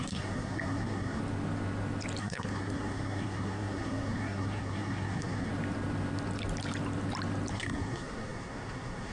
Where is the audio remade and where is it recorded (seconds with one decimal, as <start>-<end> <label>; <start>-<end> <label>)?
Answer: 0.0-1.2 remade; 1.2-2.2 recorded; 2.2-5.5 remade; 5.5-7.5 recorded; 7.5-9.1 remade